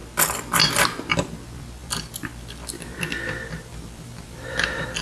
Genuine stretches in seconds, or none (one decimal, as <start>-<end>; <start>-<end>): 0.0-1.0